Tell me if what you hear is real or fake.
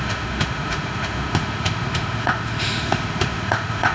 fake